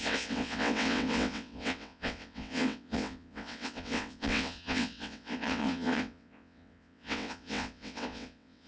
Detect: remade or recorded remade